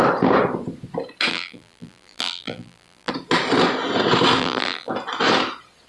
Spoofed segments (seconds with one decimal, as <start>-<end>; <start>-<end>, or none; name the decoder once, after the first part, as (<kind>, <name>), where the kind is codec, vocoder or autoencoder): 1.3-3.1 (vocoder, BigVGAN v2); 4.4-4.9